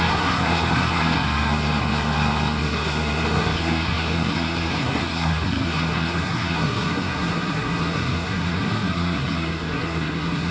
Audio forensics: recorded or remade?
remade